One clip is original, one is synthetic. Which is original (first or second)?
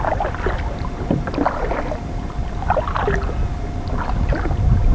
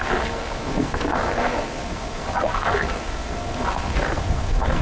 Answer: first